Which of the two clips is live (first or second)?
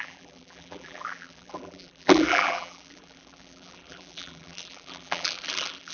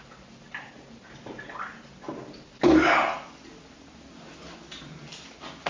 second